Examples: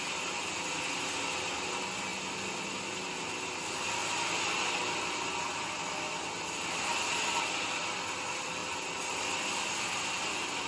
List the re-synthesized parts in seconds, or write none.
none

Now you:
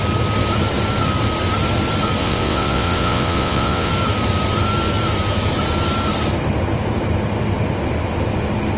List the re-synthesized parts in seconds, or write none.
2.2-3.9

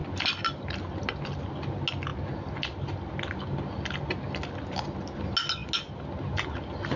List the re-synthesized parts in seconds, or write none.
none

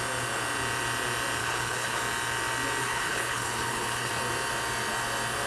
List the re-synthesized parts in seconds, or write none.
1.4-2.0; 2.8-4.1